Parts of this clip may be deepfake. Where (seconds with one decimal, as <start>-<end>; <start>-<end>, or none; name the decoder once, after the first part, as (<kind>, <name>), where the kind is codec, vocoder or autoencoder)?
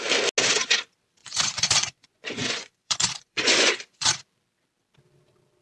1.2-4.1 (vocoder, Vocos)